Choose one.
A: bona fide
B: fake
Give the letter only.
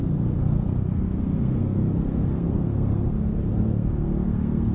B